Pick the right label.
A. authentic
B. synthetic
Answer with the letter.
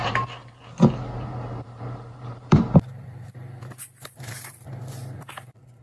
B